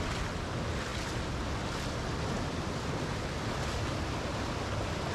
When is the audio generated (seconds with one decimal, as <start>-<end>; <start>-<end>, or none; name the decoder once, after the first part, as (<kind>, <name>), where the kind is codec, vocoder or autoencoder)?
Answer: none